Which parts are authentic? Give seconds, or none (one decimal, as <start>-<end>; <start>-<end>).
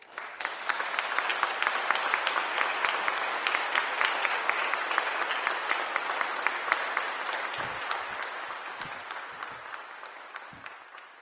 0.0-11.2